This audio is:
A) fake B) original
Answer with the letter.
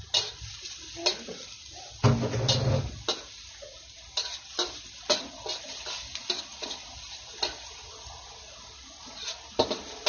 B